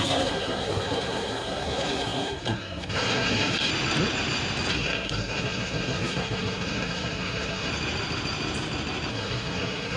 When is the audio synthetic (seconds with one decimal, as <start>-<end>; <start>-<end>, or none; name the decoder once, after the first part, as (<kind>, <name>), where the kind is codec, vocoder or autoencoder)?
0.0-3.7 (codec, SNAC); 4.7-7.7; 9.1-10.0